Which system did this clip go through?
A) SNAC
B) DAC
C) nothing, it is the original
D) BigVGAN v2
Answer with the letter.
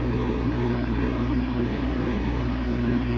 A